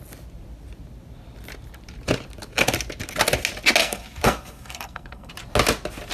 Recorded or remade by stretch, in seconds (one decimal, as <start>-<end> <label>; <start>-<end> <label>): 0.0-3.8 recorded; 3.8-5.3 remade; 5.3-6.1 recorded

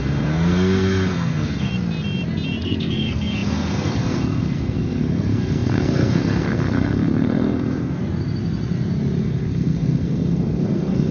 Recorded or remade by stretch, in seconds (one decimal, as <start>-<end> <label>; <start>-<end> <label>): 0.0-1.7 remade; 1.7-2.6 recorded; 2.6-8.0 remade; 8.0-9.2 recorded; 9.2-11.1 remade

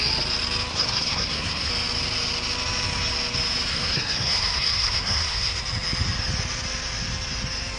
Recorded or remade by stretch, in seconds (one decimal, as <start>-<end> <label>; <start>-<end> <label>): 0.0-0.7 recorded; 0.7-1.7 remade; 1.7-3.7 recorded; 3.7-5.6 remade; 5.6-7.8 recorded

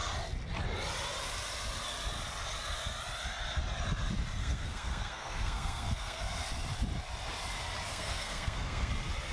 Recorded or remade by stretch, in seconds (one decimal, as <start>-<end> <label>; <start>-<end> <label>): 0.0-4.4 recorded; 4.4-6.2 remade; 6.2-7.9 recorded; 7.9-8.9 remade; 8.9-9.3 recorded

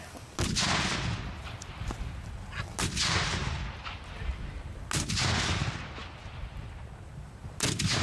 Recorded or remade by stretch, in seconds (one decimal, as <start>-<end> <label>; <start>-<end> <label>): 0.0-8.0 recorded

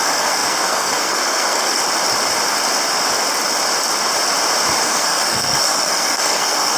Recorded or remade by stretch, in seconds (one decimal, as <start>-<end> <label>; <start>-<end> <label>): 0.0-1.8 remade; 1.8-4.8 recorded; 4.8-6.8 remade

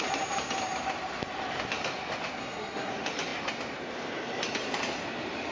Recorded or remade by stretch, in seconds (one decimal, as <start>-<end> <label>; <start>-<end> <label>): 0.0-2.4 recorded; 2.4-2.9 remade; 2.9-5.5 recorded